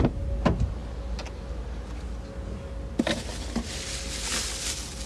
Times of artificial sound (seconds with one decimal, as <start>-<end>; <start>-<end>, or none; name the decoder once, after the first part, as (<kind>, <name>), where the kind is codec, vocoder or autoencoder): none